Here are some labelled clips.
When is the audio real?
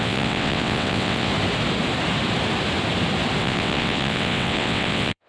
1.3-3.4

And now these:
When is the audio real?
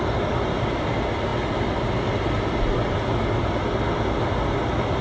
0.0-5.0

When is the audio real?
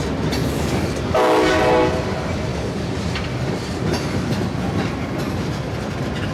0.0-0.4; 1.6-2.5; 3.0-6.3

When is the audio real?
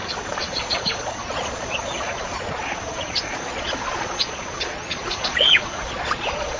none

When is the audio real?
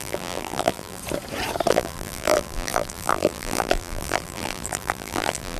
1.0-1.7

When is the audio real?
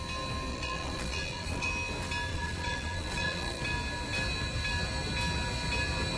0.0-0.5; 1.7-2.3; 3.6-6.2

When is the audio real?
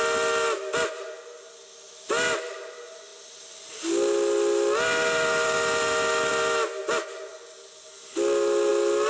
0.0-9.1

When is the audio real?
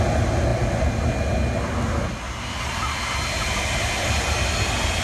0.0-5.0